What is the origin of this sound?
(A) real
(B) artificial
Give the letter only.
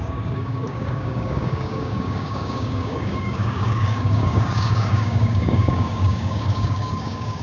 B